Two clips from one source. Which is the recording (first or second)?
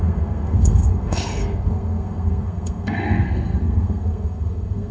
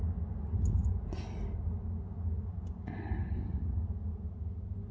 second